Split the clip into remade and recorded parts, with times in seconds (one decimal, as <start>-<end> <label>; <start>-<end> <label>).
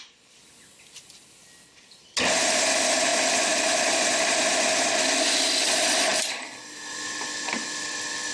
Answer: 0.0-8.3 recorded